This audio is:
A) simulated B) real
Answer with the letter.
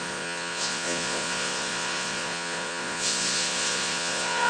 A